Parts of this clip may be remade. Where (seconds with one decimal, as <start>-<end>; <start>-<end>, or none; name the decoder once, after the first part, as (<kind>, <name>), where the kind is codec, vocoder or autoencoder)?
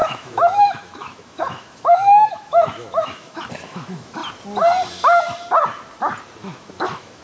0.0-4.2 (autoencoder, DAC-VAE); 6.4-7.2